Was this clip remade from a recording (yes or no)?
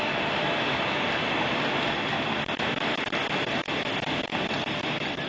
no